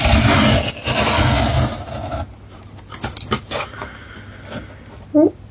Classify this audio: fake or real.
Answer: real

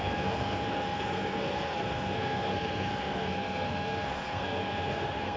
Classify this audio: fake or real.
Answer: fake